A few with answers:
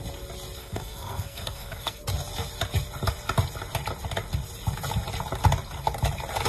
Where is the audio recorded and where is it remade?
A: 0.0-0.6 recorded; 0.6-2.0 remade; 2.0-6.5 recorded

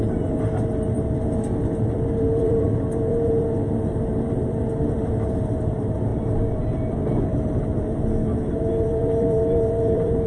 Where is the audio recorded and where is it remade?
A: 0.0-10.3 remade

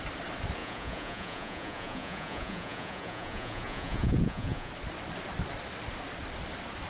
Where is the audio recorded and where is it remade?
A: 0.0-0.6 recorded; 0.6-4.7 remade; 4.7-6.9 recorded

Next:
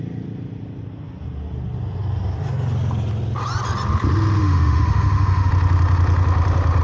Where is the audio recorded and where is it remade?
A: 0.0-4.4 recorded; 4.4-5.5 remade; 5.5-6.8 recorded